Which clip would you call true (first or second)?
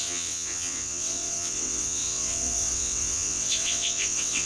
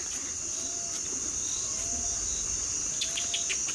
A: second